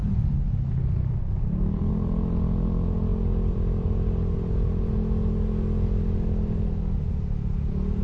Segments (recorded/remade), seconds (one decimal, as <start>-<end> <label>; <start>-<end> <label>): 0.0-8.0 recorded